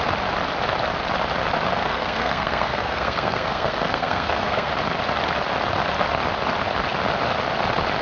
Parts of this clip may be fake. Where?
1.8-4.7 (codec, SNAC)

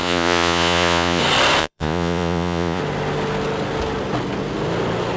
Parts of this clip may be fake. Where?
0.0-1.2 (vocoder, Vocos); 1.6-2.8

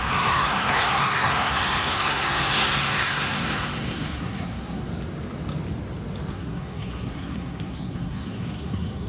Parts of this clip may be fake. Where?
0.0-4.9 (codec, SNAC); 6.3-9.1

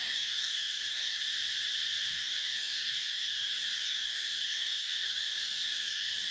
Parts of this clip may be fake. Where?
0.0-1.2 (codec, DAC); 2.1-6.3